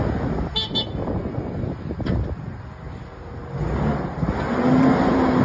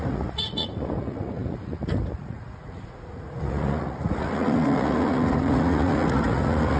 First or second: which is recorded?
first